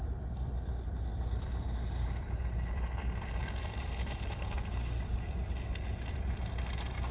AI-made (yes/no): yes